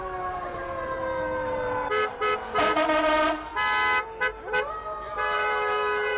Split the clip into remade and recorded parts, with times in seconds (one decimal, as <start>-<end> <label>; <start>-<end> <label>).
0.0-3.5 remade; 3.5-4.7 recorded; 4.7-6.2 remade